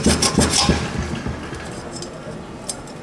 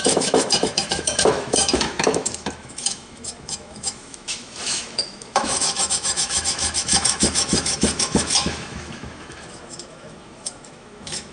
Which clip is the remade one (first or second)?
second